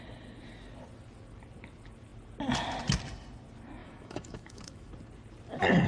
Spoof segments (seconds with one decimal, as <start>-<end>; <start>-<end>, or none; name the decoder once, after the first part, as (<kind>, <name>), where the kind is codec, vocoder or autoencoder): 3.8-4.9 (autoencoder, DAC-VAE)